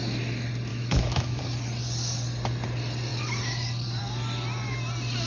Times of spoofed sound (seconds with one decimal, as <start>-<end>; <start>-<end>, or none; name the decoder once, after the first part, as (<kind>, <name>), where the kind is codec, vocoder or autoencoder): 0.7-1.4 (autoencoder, DAC-VAE)